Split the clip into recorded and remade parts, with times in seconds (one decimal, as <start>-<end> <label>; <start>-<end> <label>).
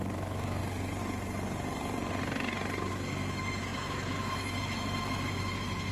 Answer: 0.0-0.6 remade; 0.6-2.9 recorded; 2.9-5.9 remade